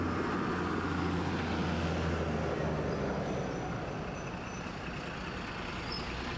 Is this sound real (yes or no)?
yes